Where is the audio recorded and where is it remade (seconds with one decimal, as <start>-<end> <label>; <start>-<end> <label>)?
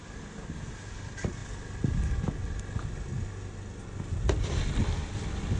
0.0-5.6 recorded